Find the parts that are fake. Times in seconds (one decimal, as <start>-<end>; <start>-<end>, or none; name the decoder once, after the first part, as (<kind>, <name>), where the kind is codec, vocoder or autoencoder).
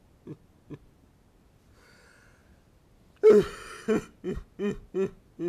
none